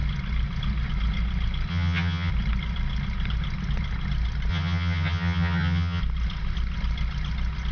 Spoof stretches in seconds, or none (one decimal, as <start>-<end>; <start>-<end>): 1.7-2.3; 4.5-6.0